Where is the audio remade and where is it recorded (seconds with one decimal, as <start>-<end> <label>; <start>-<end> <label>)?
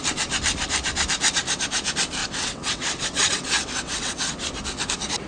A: 0.0-2.2 recorded; 2.2-4.3 remade; 4.3-5.3 recorded